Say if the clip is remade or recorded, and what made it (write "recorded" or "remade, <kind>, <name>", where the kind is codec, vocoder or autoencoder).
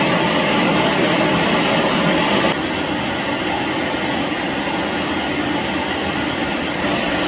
recorded